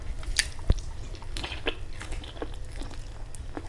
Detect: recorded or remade recorded